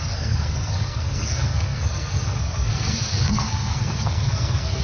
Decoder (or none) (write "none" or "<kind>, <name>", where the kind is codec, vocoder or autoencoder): codec, SNAC